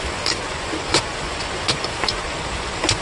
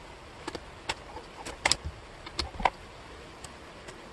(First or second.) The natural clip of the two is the second